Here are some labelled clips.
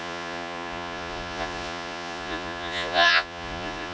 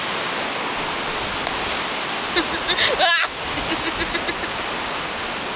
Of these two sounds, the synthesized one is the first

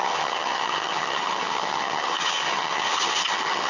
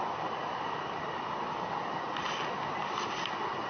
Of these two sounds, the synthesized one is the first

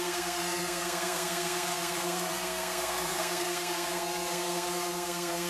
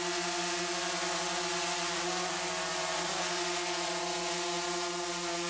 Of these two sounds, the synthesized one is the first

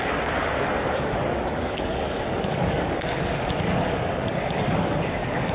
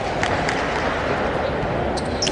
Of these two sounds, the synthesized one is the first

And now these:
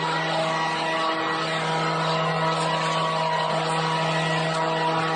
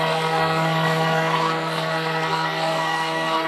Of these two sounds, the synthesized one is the second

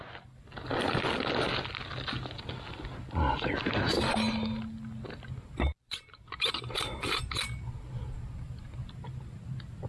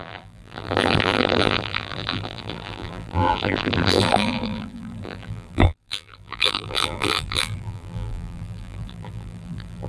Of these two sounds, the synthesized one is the second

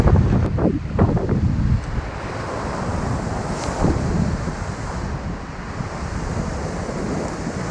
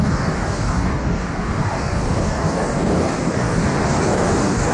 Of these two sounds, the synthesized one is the second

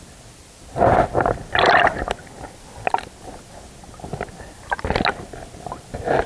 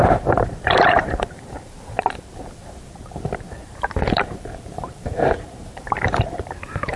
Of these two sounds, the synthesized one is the second